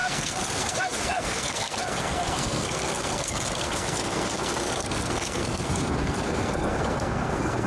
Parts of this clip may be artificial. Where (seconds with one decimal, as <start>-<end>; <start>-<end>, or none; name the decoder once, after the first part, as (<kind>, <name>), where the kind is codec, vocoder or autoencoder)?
0.0-7.7 (codec, SNAC)